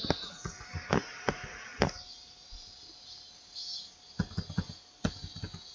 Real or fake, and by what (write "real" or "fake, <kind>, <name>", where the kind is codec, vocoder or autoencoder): real